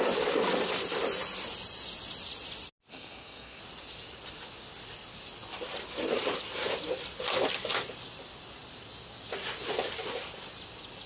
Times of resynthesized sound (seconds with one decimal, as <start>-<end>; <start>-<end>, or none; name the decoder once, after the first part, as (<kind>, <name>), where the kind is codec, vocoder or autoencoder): 2.9-3.6 (codec, SNAC)